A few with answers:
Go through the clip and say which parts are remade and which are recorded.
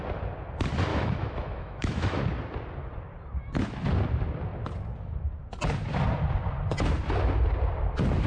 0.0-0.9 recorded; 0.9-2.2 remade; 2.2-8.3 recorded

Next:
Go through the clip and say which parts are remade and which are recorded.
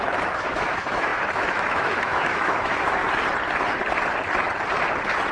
0.0-3.0 remade; 3.0-5.3 recorded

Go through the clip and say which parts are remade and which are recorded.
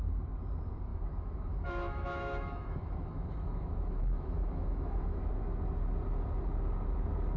0.0-0.9 recorded; 0.9-5.3 remade; 5.3-7.4 recorded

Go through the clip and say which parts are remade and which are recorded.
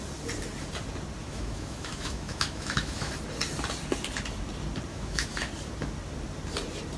0.0-1.2 recorded; 1.2-3.1 remade; 3.1-4.9 recorded; 4.9-5.5 remade; 5.5-7.0 recorded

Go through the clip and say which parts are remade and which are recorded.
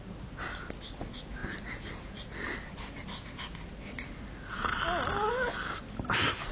0.0-6.5 recorded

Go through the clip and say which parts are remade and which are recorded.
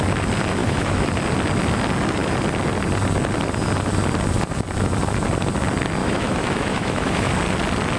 0.0-0.6 recorded; 0.6-1.1 remade; 1.1-6.0 recorded; 6.0-7.3 remade; 7.3-8.0 recorded